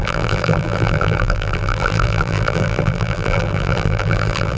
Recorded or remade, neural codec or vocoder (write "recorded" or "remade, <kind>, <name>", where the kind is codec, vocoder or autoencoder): remade, vocoder, BigVGAN v2